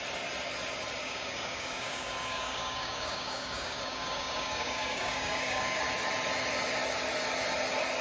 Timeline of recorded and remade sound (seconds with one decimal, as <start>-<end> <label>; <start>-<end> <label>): 0.0-1.0 recorded; 1.0-5.8 remade; 5.8-8.0 recorded